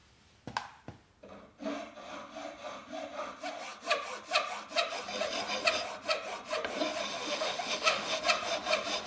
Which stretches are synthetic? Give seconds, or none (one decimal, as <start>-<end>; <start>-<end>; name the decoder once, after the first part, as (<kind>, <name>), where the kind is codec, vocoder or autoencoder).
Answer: 7.1-8.2 (autoencoder, DAC-VAE)